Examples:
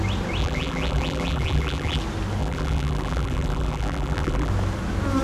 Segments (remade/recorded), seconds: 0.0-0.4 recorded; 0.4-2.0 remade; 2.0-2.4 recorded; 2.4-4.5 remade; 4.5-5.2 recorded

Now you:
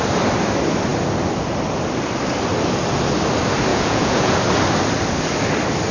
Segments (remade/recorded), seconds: 0.0-3.7 recorded; 3.7-4.3 remade; 4.3-5.9 recorded

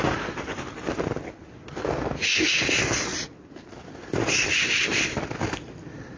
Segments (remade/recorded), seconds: 0.0-6.2 recorded

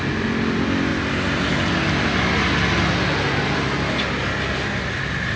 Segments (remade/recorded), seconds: 0.0-5.4 recorded

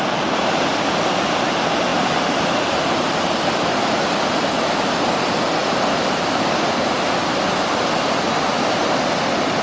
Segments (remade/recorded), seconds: 0.0-9.6 recorded

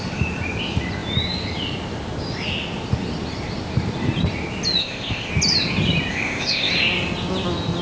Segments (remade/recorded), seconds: 0.0-4.8 recorded; 4.8-5.3 remade; 5.3-6.1 recorded; 6.1-6.7 remade; 6.7-7.8 recorded

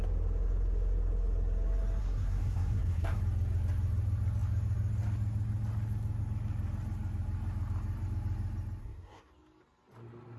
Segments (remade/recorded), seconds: 0.0-2.0 recorded; 2.0-3.2 remade; 3.2-8.8 recorded; 8.8-9.3 remade; 9.3-10.4 recorded